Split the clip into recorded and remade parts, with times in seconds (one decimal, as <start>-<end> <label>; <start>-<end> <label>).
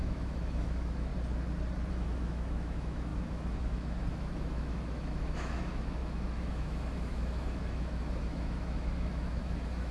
0.0-1.1 remade; 1.1-1.9 recorded; 1.9-9.9 remade